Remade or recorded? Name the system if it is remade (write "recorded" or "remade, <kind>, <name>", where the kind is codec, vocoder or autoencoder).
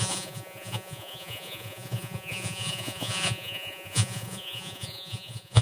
remade, vocoder, Vocos